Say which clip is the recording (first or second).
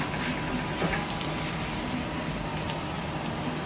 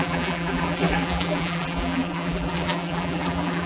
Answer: first